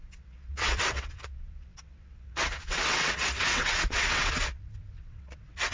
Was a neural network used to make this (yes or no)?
yes